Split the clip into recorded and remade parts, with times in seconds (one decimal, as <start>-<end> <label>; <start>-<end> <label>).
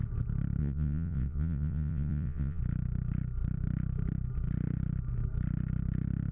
0.0-0.6 recorded; 0.6-2.6 remade; 2.6-6.3 recorded